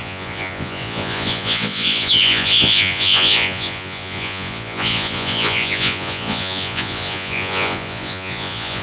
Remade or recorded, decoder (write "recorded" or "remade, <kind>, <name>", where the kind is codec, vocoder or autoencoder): remade, vocoder, Vocos